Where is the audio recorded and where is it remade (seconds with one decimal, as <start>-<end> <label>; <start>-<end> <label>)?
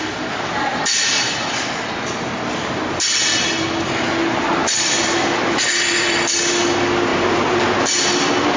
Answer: 0.0-0.7 recorded; 0.7-3.5 remade; 3.5-4.6 recorded; 4.6-6.2 remade; 6.2-7.1 recorded; 7.1-7.7 remade; 7.7-8.6 recorded